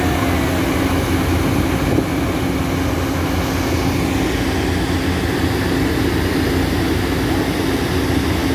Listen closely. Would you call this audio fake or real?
real